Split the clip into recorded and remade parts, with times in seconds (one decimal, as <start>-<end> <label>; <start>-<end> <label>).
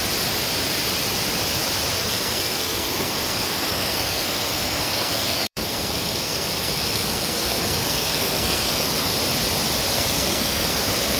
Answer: 0.0-2.0 recorded; 2.0-9.1 remade; 9.1-9.9 recorded; 9.9-11.2 remade